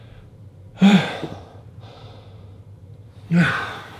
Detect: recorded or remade remade